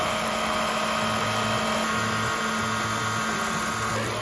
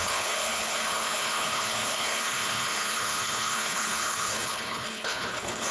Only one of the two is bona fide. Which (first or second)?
first